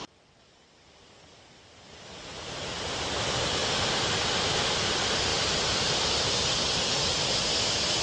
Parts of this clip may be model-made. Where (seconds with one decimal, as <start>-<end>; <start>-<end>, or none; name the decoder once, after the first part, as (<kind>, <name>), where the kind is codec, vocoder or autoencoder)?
3.6-4.2 (vocoder, BigVGAN v2); 5.3-6.9